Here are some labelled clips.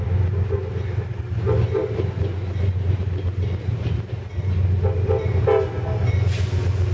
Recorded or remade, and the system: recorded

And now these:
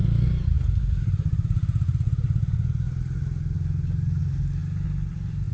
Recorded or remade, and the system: recorded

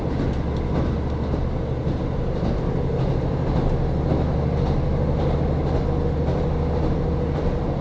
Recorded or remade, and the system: recorded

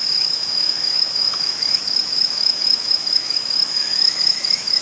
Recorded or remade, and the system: remade, autoencoder, DAC-VAE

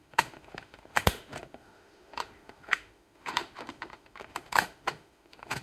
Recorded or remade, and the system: remade, autoencoder, DAC-VAE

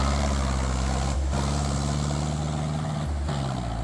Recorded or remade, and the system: recorded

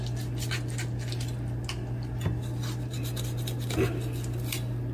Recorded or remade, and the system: recorded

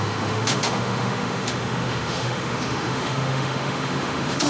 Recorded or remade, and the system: remade, autoencoder, DAC-VAE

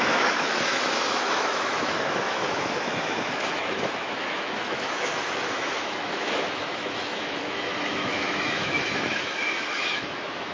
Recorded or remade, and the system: remade, autoencoder, DAC-VAE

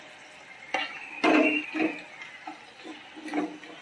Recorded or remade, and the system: recorded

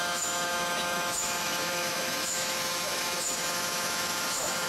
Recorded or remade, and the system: remade, autoencoder, DAC-VAE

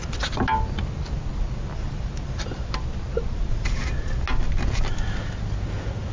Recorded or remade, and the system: recorded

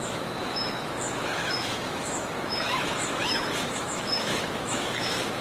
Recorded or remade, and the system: remade, autoencoder, DAC-VAE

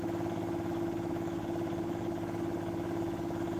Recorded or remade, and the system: remade, autoencoder, DAC-VAE